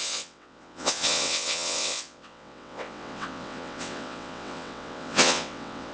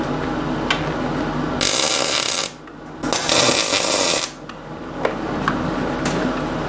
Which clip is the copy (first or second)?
first